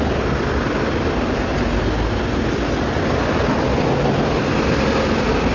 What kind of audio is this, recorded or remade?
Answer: recorded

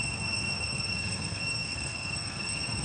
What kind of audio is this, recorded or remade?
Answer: remade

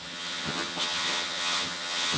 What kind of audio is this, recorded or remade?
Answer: remade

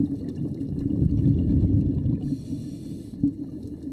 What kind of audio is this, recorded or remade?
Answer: recorded